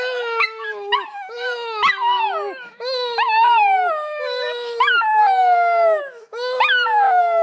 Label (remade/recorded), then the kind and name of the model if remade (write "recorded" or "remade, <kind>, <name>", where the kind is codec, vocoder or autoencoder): remade, autoencoder, DAC-VAE